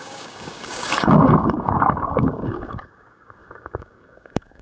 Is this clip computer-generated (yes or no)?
yes